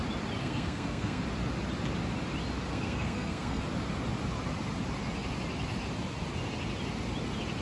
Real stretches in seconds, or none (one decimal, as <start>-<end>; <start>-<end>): 0.0-0.4; 1.2-2.7; 3.6-7.6